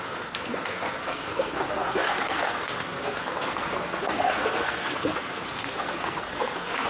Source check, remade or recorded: remade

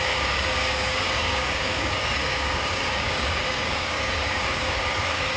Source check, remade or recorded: remade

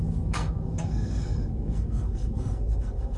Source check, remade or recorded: remade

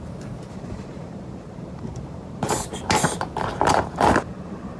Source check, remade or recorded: remade